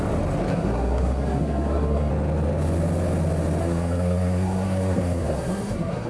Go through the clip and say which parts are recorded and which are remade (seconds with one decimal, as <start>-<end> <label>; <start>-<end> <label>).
0.0-0.5 recorded; 0.5-2.1 remade; 2.1-3.6 recorded; 3.6-6.1 remade